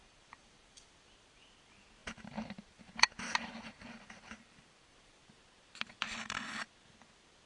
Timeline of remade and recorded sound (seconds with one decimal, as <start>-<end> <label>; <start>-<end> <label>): 0.0-0.9 remade; 0.9-2.0 recorded; 2.0-5.3 remade; 5.3-7.5 recorded